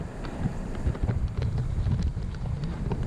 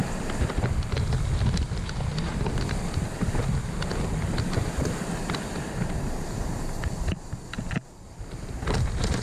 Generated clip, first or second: first